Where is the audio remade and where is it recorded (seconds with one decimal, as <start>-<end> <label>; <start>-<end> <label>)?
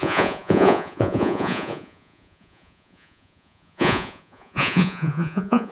0.0-5.7 remade